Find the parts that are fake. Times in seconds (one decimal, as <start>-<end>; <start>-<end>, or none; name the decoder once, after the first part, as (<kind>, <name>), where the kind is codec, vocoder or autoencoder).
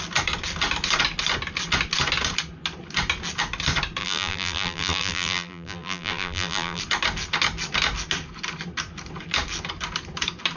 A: 4.0-6.8 (vocoder, BigVGAN v2)